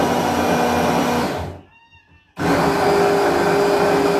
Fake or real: real